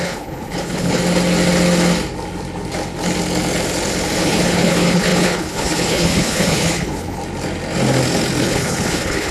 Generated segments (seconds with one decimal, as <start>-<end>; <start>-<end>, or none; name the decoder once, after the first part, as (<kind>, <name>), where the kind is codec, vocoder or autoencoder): 0.0-1.0 (codec, HILCodec); 4.2-7.2; 8.4-9.3